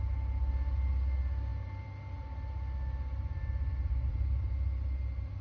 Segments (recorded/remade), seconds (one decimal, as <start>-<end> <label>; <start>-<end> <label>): 0.0-5.4 recorded